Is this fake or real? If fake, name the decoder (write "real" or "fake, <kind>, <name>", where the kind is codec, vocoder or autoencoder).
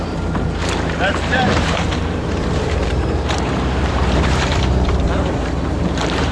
fake, vocoder, BigVGAN v2